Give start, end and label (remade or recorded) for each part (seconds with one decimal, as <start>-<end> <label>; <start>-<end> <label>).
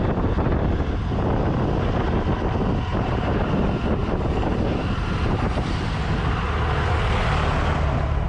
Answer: 0.0-2.9 recorded; 2.9-3.6 remade; 3.6-4.0 recorded; 4.0-5.8 remade; 5.8-8.3 recorded